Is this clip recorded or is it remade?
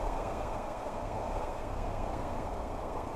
remade